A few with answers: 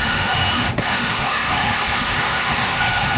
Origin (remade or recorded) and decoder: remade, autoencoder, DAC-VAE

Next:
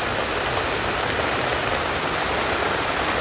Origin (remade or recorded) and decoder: recorded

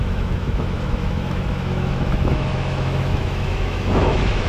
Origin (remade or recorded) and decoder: remade, autoencoder, DAC-VAE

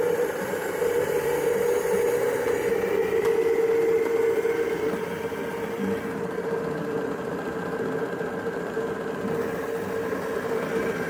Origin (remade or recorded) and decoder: recorded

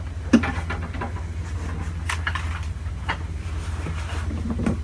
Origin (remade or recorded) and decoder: recorded